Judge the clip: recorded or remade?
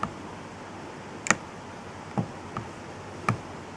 recorded